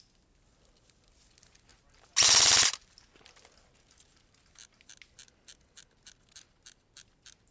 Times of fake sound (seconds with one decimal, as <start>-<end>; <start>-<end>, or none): none